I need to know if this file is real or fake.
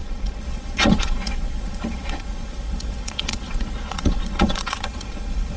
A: fake